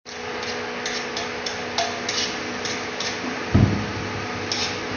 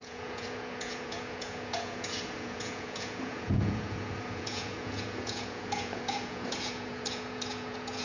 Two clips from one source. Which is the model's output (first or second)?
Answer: second